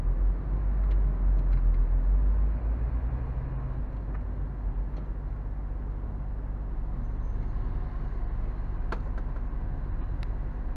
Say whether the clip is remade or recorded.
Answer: recorded